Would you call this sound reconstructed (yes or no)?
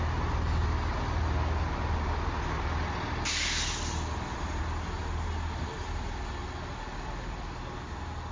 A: no